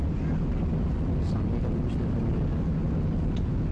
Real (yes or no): yes